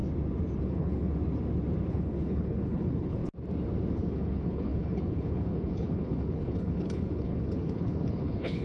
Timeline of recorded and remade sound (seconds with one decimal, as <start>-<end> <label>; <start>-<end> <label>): 0.0-0.6 recorded; 0.6-1.1 remade; 1.1-1.9 recorded; 1.9-3.2 remade; 3.2-3.9 recorded; 3.9-8.6 remade